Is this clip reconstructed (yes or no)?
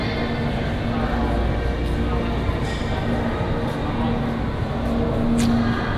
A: no